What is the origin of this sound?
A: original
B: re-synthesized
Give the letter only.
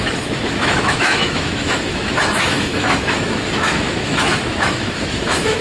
B